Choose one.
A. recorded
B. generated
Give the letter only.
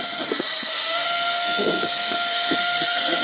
B